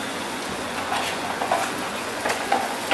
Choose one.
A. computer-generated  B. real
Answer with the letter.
A